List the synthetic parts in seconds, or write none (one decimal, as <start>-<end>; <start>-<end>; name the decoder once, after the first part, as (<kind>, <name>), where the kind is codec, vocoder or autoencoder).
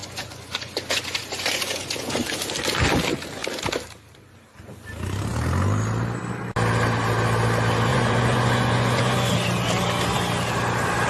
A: 0.0-2.5 (vocoder, Vocos); 7.9-9.3